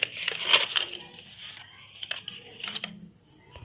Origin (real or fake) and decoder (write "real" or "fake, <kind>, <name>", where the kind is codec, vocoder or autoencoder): real